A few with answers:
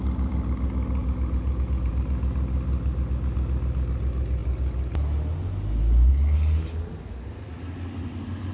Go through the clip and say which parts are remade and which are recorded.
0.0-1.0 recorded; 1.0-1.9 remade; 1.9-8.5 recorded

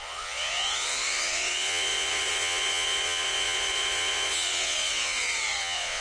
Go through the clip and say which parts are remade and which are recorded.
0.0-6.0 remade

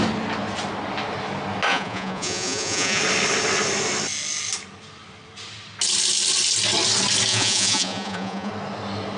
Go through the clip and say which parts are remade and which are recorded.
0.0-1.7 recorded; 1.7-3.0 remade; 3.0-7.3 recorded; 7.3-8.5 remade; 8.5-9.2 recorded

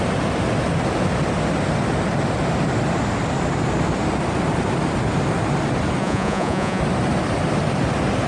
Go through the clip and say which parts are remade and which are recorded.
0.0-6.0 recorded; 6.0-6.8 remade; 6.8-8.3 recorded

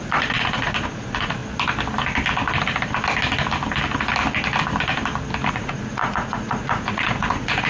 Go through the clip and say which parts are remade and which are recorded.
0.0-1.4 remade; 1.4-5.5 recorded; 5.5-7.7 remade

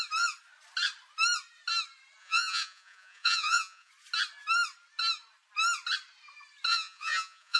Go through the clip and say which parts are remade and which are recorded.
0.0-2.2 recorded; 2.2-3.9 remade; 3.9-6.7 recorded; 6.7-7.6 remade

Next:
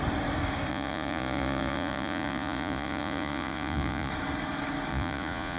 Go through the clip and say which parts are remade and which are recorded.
0.0-0.7 recorded; 0.7-4.1 remade; 4.1-4.9 recorded; 4.9-5.6 remade